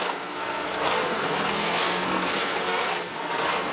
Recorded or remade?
remade